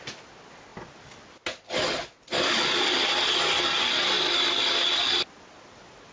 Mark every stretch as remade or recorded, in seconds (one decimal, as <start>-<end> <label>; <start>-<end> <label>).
0.0-6.1 recorded